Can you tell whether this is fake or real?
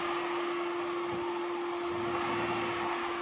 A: real